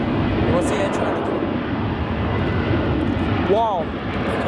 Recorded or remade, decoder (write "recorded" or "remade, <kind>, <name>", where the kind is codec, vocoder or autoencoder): recorded